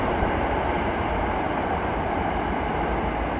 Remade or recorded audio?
recorded